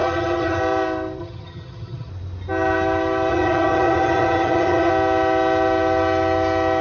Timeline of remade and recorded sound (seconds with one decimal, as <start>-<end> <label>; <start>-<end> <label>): 0.0-0.6 remade; 0.6-1.2 recorded; 1.2-2.1 remade; 2.1-3.3 recorded; 3.3-4.9 remade; 4.9-6.8 recorded